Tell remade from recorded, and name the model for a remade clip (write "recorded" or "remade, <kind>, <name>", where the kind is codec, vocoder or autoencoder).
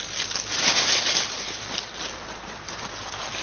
recorded